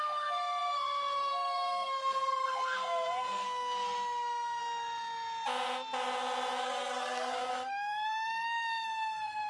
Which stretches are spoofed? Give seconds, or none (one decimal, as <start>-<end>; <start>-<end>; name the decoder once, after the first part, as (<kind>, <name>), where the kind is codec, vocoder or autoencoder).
0.0-4.6 (codec, SNAC); 6.6-9.5